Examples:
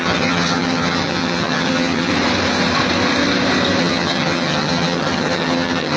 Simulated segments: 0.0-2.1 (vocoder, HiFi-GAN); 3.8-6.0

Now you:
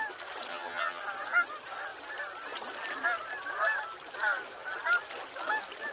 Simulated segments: 0.5-1.0 (vocoder, HiFi-GAN)

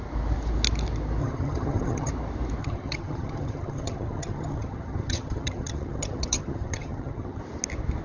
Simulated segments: 1.2-2.1 (vocoder, HiFi-GAN); 2.6-7.4

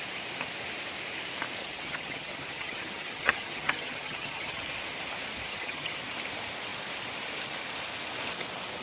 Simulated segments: 1.6-4.6 (vocoder, HiFi-GAN); 5.5-6.0

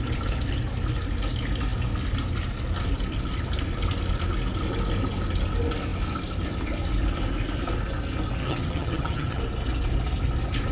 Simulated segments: 8.4-9.4 (vocoder, HiFi-GAN)